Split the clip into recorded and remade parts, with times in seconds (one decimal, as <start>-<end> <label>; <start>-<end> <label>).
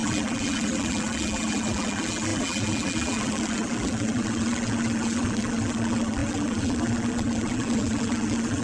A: 0.0-8.6 remade